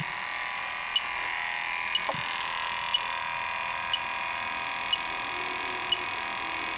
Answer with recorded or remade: recorded